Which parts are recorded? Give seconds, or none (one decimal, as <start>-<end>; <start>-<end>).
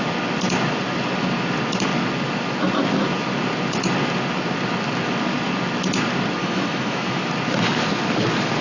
0.0-6.4; 7.3-8.6